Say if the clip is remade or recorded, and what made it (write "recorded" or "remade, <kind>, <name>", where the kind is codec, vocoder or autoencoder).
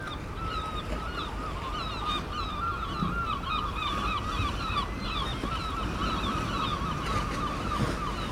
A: recorded